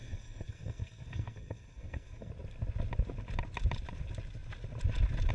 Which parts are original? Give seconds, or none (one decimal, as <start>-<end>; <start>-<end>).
2.3-5.3